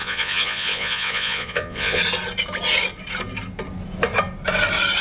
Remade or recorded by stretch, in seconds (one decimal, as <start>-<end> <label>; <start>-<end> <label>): 0.0-2.0 remade; 2.0-5.0 recorded